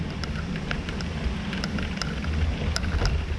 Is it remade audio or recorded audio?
recorded